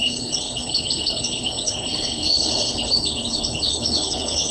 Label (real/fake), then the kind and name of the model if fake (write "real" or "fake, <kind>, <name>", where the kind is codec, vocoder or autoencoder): fake, codec, HILCodec